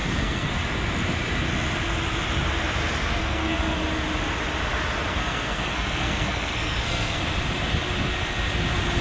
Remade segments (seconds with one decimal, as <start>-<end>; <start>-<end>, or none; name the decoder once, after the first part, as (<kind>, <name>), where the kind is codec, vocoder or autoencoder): 0.0-0.5 (codec, SNAC); 3.2-3.8; 5.1-7.2